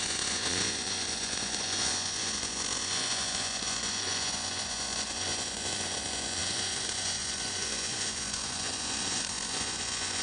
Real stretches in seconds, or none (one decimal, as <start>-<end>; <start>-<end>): none